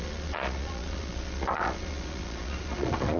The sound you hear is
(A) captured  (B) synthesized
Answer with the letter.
B